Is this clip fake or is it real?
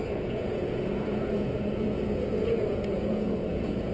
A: fake